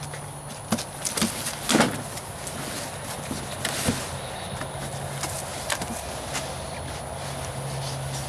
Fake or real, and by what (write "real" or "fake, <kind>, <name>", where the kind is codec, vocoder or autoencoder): real